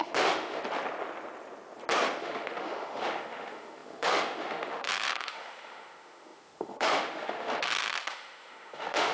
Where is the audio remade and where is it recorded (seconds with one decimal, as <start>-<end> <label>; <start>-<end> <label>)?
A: 0.0-0.6 remade; 0.6-2.2 recorded; 2.2-9.1 remade